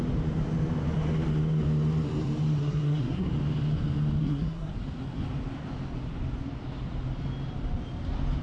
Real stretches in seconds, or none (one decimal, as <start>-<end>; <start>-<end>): 0.0-2.6; 3.3-4.2; 4.7-8.4